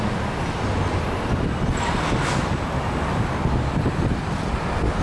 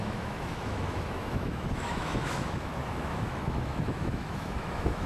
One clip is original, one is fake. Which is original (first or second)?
first